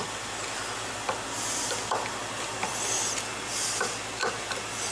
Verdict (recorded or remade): recorded